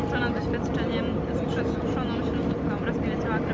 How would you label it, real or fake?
real